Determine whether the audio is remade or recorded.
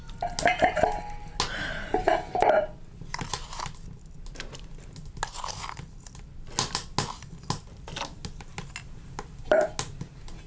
recorded